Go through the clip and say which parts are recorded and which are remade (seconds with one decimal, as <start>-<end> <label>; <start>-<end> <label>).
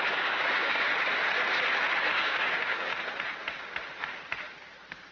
0.0-0.9 remade; 0.9-2.0 recorded; 2.0-2.9 remade; 2.9-5.1 recorded